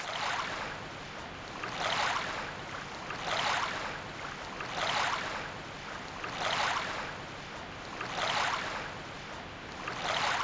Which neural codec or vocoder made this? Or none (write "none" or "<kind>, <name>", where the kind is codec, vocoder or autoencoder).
none